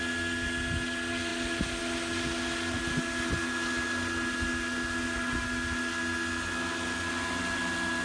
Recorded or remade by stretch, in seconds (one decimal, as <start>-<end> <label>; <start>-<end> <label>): 0.0-8.0 recorded